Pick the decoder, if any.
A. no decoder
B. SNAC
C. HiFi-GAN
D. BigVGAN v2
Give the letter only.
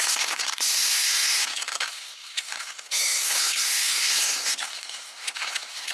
B